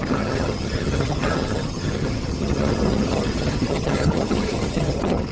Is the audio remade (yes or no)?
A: yes